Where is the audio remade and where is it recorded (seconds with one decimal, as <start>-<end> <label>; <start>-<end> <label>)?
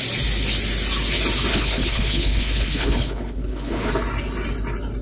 0.0-1.5 recorded; 1.5-3.9 remade; 3.9-5.0 recorded